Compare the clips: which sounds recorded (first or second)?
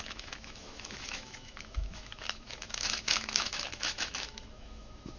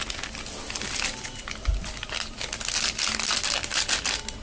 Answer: second